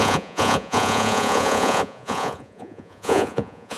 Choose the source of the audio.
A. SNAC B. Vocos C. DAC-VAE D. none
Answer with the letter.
B